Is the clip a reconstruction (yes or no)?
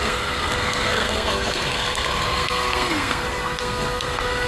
yes